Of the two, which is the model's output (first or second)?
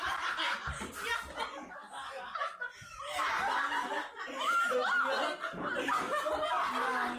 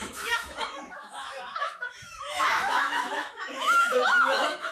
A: second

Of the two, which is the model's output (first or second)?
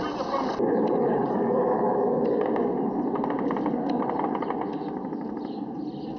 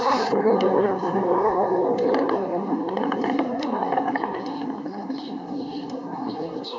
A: second